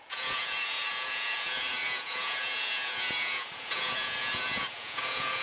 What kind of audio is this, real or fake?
fake